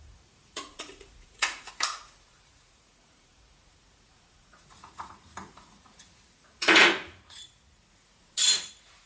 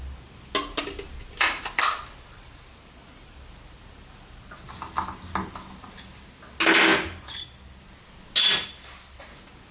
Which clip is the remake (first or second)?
first